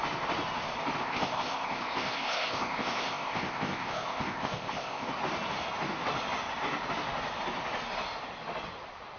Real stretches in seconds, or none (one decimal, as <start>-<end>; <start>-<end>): 0.0-1.0; 5.1-9.2